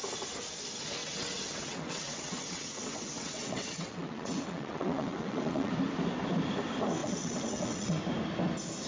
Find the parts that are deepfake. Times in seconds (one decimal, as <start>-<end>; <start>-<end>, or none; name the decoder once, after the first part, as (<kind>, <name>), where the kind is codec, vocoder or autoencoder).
1.0-5.7 (vocoder, WaveNeXt); 7.0-8.0